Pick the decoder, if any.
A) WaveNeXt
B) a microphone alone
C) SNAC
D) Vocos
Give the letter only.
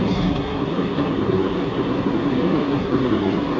C